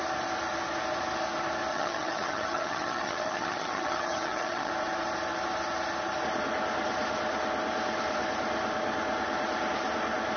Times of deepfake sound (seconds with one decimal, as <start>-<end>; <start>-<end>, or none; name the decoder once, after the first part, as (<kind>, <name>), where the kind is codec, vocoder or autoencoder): 1.7-4.7 (vocoder, HiFi-GAN)

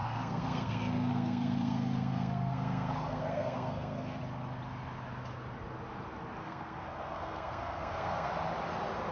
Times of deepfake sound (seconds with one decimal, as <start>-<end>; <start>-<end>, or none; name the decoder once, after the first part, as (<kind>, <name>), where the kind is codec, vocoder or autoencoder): 0.0-4.2 (codec, SNAC); 6.4-8.3

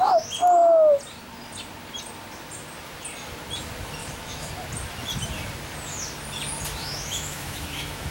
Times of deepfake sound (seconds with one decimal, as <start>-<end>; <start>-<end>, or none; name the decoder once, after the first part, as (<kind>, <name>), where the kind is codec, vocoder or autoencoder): 4.0-4.5 (autoencoder, DAC-VAE); 6.8-8.1